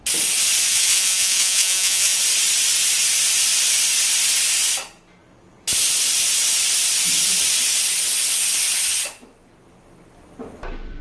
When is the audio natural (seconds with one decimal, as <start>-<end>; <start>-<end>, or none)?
0.0-0.7; 2.2-11.0